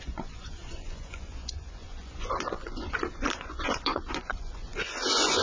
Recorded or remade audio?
remade